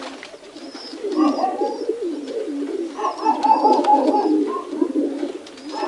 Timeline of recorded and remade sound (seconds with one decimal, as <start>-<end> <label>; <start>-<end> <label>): 0.0-0.9 recorded; 0.9-2.3 remade; 2.3-5.9 recorded